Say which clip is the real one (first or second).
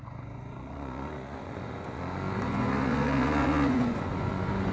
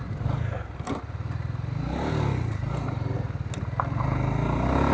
second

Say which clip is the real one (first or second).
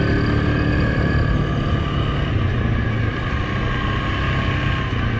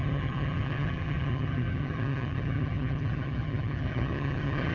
first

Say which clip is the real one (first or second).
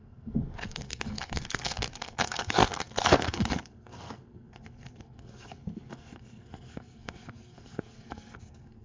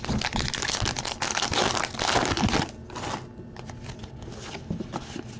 second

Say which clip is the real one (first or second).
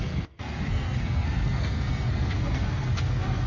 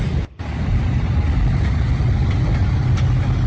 second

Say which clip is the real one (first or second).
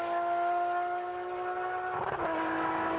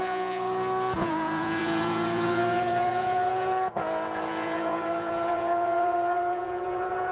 first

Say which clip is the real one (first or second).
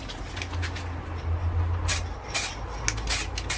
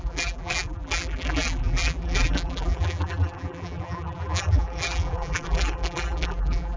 first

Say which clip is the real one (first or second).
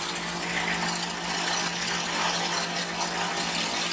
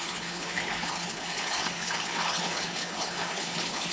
first